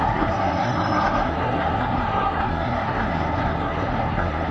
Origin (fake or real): fake